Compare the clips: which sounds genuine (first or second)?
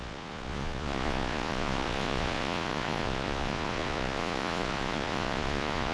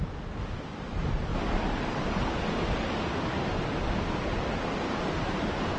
second